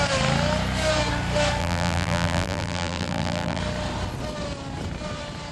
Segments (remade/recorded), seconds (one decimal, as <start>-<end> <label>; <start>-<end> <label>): 0.0-1.6 recorded; 1.6-3.6 remade; 3.6-5.5 recorded